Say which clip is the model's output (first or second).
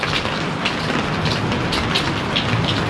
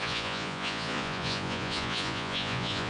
second